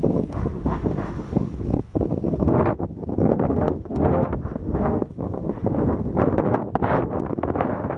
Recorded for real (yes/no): no